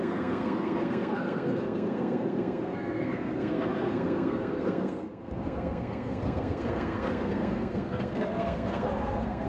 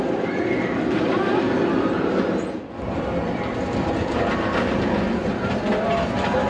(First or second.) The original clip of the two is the second